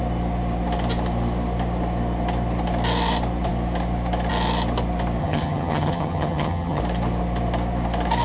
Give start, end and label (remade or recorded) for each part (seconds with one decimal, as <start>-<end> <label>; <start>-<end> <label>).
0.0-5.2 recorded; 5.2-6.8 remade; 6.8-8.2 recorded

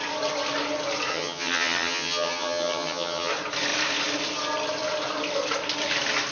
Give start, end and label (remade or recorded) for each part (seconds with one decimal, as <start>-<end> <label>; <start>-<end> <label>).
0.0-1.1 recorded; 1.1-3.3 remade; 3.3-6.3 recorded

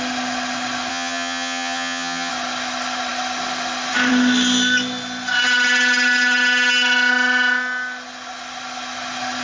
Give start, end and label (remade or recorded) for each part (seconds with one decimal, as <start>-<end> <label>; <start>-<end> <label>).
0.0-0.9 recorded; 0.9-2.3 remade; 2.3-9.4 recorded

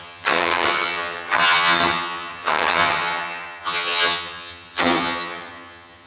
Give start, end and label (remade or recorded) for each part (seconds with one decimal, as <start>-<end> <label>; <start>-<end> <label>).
0.0-6.1 remade

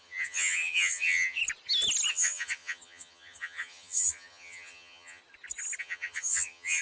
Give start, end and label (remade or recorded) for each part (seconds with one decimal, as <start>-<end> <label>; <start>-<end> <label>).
0.0-1.4 remade; 1.4-2.1 recorded; 2.1-5.2 remade; 5.2-5.8 recorded; 5.8-6.8 remade